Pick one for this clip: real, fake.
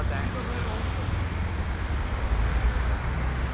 real